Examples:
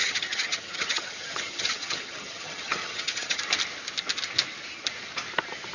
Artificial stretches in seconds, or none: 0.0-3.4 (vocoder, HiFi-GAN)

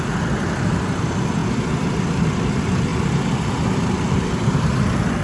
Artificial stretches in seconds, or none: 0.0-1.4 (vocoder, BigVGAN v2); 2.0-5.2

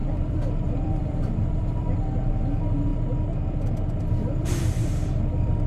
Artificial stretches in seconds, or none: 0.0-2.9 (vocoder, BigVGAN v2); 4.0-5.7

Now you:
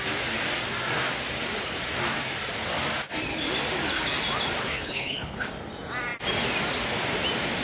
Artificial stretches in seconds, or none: 4.6-5.5 (codec, HILCodec)